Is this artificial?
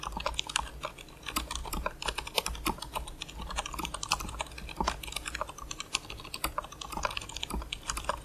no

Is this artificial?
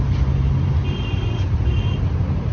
no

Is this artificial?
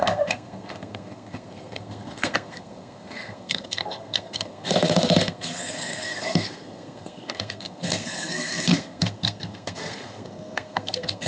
yes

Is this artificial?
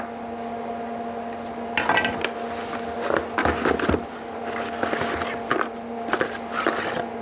no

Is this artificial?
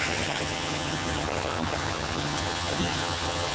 yes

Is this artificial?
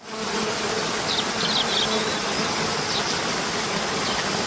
no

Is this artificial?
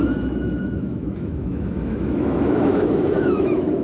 yes